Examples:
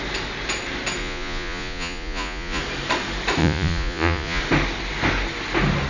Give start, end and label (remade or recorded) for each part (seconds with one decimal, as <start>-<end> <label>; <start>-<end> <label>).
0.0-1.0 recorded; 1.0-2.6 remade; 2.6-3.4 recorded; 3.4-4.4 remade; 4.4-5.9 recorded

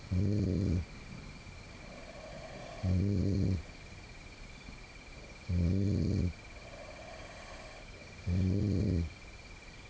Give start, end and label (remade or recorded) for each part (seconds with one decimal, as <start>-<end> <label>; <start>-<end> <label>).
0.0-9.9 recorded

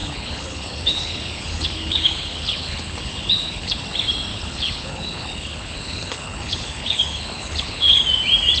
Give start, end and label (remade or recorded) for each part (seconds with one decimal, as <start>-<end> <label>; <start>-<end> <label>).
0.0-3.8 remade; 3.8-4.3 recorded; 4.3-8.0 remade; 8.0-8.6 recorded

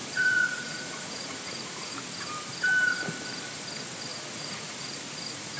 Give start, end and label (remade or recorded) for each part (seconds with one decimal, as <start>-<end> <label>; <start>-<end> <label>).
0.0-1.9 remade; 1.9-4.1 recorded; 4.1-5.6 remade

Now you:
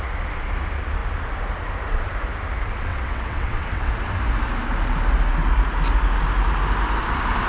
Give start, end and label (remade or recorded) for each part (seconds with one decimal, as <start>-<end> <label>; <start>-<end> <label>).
0.0-2.9 recorded; 2.9-3.9 remade; 3.9-7.5 recorded

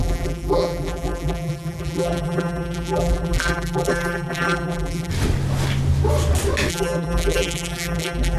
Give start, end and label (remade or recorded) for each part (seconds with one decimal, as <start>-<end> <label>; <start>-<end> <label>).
0.0-5.1 remade; 5.1-6.7 recorded; 6.7-8.4 remade

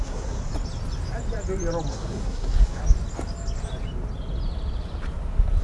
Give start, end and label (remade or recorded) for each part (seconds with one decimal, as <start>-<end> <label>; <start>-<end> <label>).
0.0-0.4 remade; 0.4-1.9 recorded; 1.9-2.8 remade; 2.8-5.6 recorded

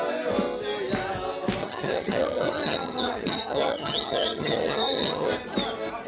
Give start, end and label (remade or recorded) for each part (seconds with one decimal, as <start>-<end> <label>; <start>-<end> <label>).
0.0-1.6 recorded; 1.6-5.3 remade; 5.3-6.1 recorded